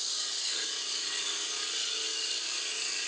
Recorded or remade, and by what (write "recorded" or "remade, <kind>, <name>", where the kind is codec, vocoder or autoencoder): remade, codec, DAC